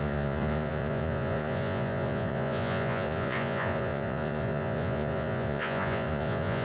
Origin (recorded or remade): remade